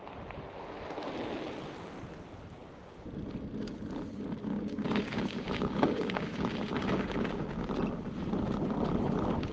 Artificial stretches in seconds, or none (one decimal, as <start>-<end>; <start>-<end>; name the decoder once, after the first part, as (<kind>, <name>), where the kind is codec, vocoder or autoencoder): 2.6-3.1 (codec, DAC); 4.4-7.7